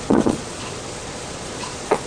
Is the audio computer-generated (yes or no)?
yes